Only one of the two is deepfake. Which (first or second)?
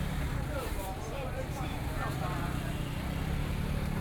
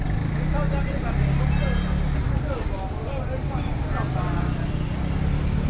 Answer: first